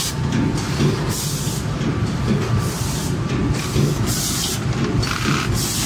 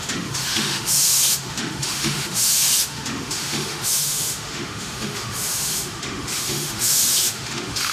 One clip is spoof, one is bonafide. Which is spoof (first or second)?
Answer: second